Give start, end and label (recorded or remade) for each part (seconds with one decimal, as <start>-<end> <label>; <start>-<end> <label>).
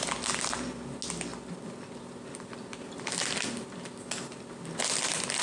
0.0-5.4 recorded